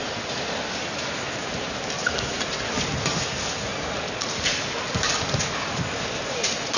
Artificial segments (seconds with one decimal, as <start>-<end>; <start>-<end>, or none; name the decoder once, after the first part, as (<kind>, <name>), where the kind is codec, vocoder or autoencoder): none